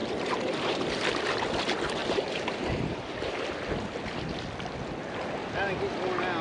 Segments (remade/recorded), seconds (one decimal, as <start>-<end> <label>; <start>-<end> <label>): 0.0-1.1 remade; 1.1-2.0 recorded; 2.0-3.0 remade; 3.0-6.4 recorded